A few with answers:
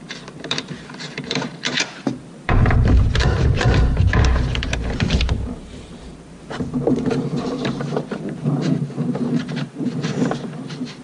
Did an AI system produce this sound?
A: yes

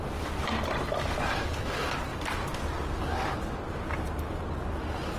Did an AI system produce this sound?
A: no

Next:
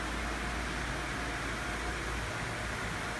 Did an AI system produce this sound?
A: no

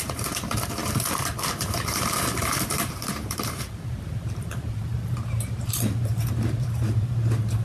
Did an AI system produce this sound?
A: yes